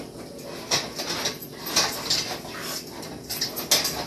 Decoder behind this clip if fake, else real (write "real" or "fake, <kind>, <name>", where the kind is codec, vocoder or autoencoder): real